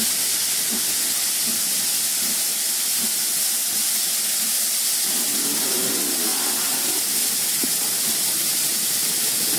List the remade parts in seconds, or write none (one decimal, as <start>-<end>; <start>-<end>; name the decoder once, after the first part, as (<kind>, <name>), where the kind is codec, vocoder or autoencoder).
none